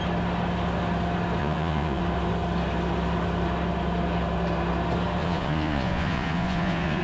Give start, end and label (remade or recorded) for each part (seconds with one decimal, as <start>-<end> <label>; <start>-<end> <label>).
0.0-1.4 recorded; 1.4-2.0 remade; 2.0-5.2 recorded; 5.2-7.0 remade